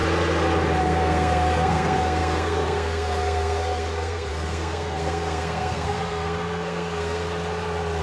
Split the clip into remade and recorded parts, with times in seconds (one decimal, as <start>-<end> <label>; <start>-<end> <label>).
0.0-0.8 recorded; 0.8-7.2 remade; 7.2-8.0 recorded